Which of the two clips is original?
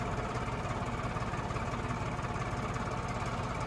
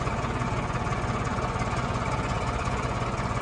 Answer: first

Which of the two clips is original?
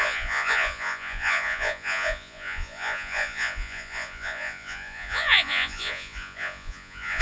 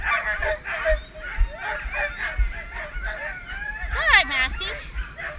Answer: second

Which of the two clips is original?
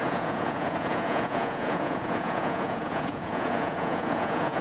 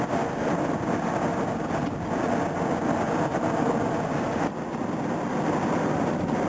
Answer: second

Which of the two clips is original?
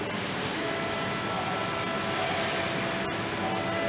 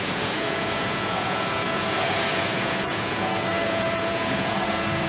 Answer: first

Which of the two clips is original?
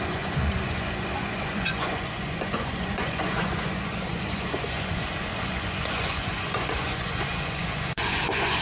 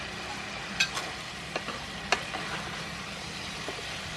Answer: second